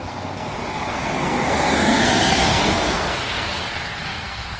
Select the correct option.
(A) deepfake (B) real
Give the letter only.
A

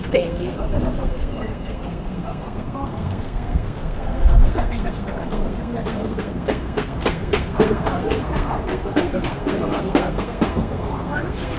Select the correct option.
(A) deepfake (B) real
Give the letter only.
A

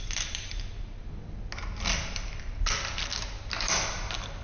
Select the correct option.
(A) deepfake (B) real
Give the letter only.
B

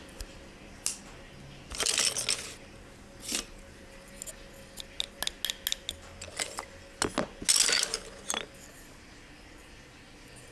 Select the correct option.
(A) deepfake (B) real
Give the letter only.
B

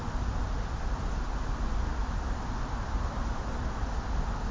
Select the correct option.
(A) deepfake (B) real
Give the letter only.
B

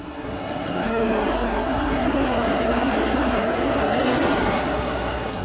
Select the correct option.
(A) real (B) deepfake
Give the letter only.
B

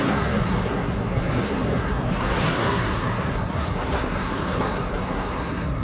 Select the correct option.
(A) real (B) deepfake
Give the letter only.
B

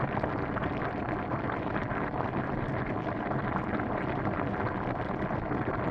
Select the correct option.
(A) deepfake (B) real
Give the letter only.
B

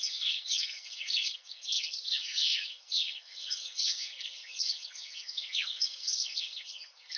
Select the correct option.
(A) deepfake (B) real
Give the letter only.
A